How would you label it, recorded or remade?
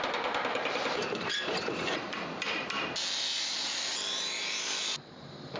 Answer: remade